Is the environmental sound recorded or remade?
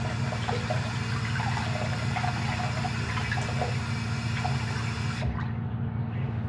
recorded